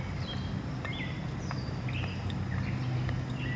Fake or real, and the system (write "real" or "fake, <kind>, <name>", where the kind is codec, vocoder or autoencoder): real